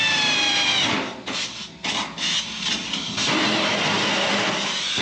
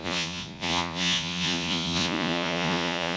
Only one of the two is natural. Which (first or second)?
first